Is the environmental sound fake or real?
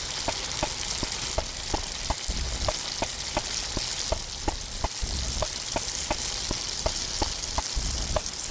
real